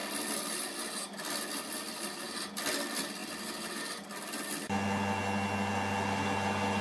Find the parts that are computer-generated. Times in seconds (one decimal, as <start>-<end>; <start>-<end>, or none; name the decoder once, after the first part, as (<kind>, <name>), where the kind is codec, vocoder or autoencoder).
none

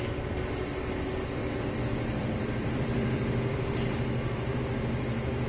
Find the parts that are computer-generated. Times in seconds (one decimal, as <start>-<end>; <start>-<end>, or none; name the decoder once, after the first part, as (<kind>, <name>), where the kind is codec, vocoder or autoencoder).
1.4-4.6 (vocoder, BigVGAN v2)

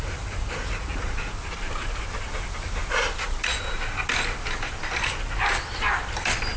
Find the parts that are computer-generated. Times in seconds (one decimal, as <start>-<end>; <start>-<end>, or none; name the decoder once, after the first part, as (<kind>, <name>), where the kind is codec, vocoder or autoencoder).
0.9-1.4 (vocoder, BigVGAN v2); 4.4-5.2

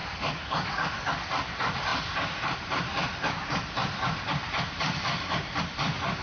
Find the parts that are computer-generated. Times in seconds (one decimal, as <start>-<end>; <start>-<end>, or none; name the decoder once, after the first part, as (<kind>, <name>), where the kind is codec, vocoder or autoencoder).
1.9-5.6 (vocoder, BigVGAN v2)